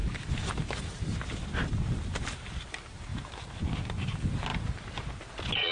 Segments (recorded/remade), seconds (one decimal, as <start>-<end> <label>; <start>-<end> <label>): 0.0-5.7 recorded